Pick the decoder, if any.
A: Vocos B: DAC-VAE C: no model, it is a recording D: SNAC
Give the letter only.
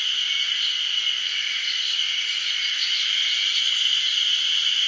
C